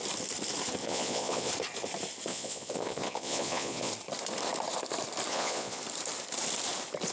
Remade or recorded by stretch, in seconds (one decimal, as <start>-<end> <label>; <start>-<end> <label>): 0.0-0.8 recorded; 0.8-1.5 remade; 1.5-2.3 recorded; 2.3-3.9 remade; 3.9-5.3 recorded; 5.3-5.8 remade; 5.8-7.1 recorded